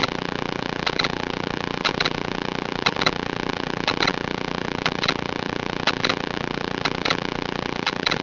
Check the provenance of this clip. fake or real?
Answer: fake